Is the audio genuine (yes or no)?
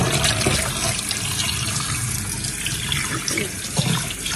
yes